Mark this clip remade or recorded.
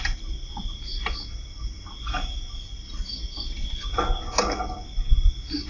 recorded